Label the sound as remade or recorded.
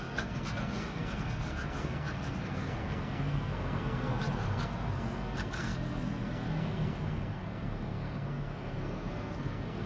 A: remade